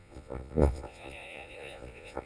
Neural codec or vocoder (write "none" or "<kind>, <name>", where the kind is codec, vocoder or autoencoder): vocoder, Vocos